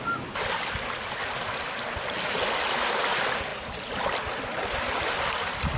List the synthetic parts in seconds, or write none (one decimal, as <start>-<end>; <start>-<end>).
none

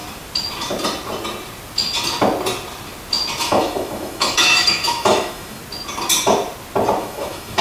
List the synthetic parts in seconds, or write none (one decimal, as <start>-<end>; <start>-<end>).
3.4-5.6; 7.0-7.6